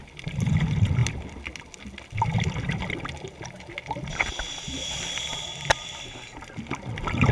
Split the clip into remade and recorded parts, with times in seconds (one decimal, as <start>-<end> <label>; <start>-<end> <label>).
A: 0.0-7.3 recorded